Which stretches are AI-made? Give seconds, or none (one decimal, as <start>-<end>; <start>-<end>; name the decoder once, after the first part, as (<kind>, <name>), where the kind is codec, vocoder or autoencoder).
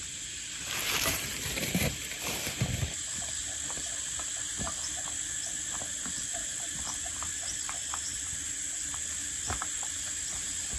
1.8-2.5 (vocoder, BigVGAN v2); 6.3-8.5